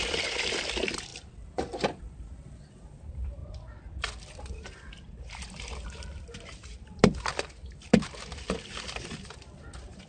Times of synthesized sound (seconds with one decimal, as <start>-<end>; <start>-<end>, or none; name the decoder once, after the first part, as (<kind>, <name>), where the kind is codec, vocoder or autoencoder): 0.0-7.3 (vocoder, BigVGAN v2)